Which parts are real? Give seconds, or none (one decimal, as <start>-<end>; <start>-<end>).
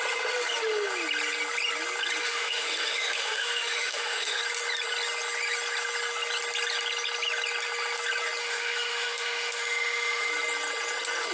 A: 0.0-2.2; 4.4-8.4; 10.3-11.3